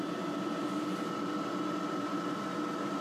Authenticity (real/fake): real